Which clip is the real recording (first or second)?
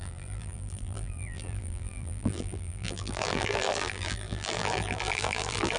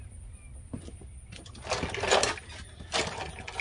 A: second